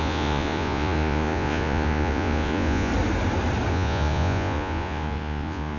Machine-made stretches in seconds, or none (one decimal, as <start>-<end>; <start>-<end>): 0.0-2.9; 3.7-5.8